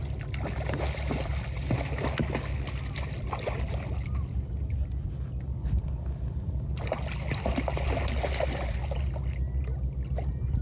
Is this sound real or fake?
real